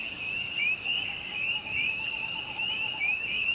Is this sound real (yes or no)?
no